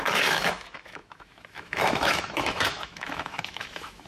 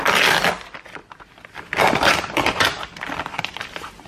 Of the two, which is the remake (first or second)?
first